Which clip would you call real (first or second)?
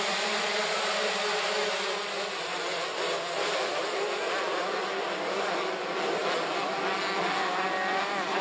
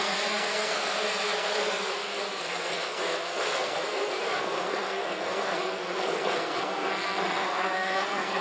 first